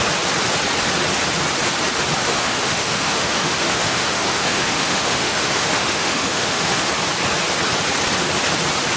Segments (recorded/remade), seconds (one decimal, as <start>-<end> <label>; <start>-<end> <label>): 0.0-2.2 recorded; 2.2-6.9 remade; 6.9-9.0 recorded